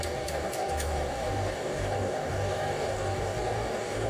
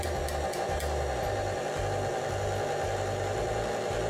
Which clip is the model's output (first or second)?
first